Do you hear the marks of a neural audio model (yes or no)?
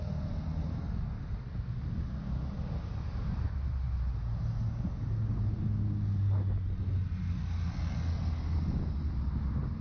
no